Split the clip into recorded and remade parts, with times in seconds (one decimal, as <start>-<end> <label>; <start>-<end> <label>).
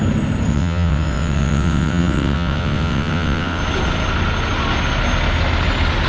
0.0-0.5 recorded; 0.5-3.6 remade; 3.6-6.1 recorded